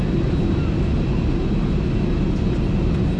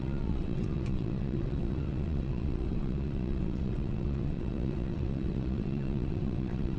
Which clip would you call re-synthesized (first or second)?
second